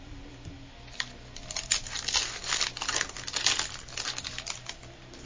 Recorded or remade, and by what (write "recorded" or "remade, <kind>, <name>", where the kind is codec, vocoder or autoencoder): recorded